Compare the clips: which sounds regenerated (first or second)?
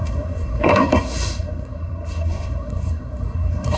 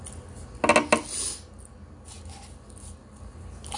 first